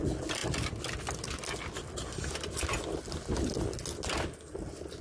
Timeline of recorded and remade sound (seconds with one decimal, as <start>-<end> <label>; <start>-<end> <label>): 0.0-5.0 recorded